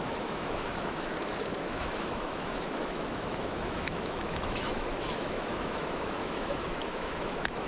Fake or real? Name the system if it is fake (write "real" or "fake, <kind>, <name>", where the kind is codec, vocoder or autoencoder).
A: fake, autoencoder, DAC-VAE